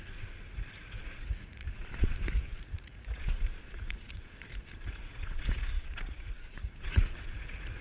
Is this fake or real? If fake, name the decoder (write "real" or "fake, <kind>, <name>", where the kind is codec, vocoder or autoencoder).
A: fake, vocoder, Vocos